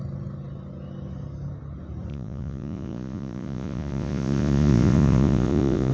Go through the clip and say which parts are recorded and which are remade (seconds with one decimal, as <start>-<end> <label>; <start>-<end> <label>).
0.0-2.1 recorded; 2.1-5.9 remade